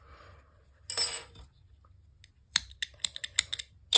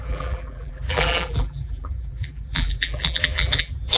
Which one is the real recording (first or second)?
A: first